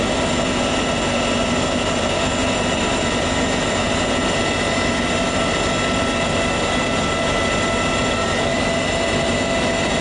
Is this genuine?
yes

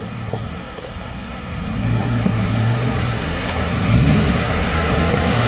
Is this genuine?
no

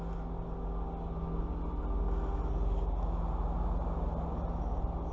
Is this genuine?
yes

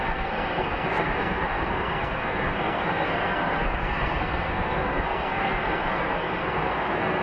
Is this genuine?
no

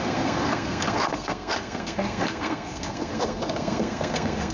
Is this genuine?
no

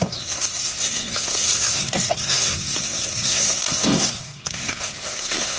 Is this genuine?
no